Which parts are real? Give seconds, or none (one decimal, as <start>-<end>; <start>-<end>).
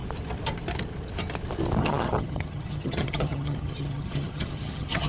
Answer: 0.0-1.8